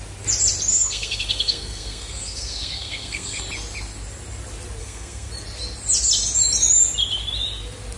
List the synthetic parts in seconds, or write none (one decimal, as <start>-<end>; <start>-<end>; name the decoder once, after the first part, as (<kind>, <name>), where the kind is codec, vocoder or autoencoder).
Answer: 0.7-3.4 (codec, SNAC); 4.8-5.3